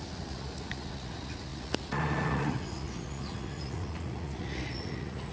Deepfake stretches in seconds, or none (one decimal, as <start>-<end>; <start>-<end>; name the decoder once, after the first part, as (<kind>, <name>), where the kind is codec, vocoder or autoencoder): 0.0-5.3 (vocoder, Vocos)